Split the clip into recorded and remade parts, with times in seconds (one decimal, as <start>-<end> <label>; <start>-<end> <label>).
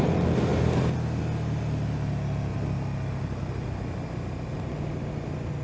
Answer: 0.0-5.6 recorded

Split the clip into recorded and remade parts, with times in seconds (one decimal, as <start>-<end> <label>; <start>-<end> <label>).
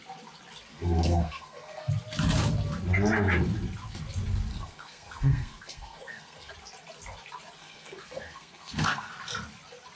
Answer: 0.0-0.7 recorded; 0.7-1.9 remade; 1.9-4.5 recorded; 4.5-6.5 remade; 6.5-7.6 recorded; 7.6-9.1 remade; 9.1-10.0 recorded